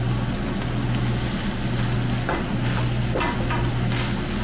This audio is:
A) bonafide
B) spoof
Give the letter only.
A